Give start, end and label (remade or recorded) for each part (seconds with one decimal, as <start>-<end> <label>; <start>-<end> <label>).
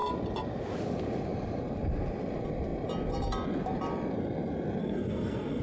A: 0.0-4.8 recorded; 4.8-5.6 remade